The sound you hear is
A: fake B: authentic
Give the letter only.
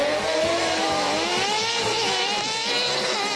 B